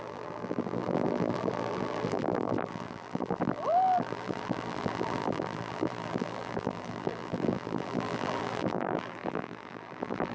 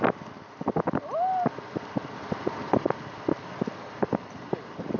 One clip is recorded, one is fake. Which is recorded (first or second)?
second